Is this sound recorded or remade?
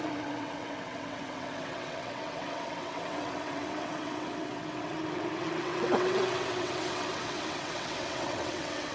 remade